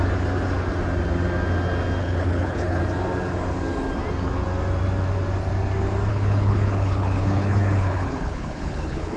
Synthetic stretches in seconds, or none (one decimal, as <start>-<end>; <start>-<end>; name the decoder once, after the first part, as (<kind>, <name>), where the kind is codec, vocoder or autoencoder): 2.0-2.8 (codec, HILCodec); 6.1-9.2